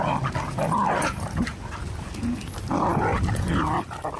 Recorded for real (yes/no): yes